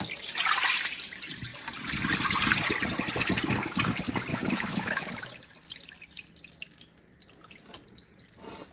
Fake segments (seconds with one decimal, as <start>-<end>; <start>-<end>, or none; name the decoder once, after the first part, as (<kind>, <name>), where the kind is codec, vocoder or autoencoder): 4.3-5.2 (autoencoder, DAC-VAE)